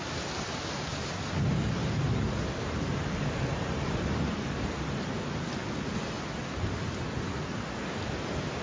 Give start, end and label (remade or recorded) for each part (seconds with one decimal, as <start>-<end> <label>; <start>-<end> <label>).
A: 0.0-1.8 recorded; 1.8-5.2 remade; 5.2-8.6 recorded